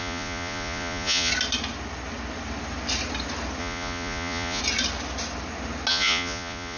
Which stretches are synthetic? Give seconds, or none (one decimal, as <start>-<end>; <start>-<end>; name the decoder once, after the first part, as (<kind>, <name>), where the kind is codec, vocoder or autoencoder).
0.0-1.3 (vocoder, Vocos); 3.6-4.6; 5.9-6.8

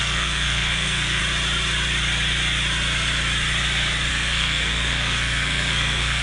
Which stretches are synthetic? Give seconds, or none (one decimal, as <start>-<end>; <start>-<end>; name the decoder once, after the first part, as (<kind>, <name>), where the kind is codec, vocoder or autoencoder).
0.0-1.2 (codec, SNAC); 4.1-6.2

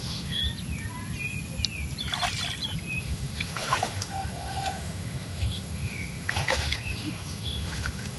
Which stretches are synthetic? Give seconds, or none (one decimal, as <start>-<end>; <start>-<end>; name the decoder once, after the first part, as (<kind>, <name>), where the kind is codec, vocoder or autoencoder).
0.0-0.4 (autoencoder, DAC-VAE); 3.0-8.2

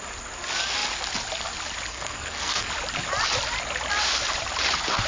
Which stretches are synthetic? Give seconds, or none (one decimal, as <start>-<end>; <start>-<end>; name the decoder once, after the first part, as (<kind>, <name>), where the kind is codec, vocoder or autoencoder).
1.9-2.7 (codec, SNAC)

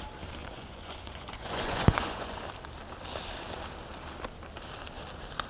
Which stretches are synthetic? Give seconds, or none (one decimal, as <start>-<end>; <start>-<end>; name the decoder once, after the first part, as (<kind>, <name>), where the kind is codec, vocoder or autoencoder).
0.4-2.4 (vocoder, Vocos)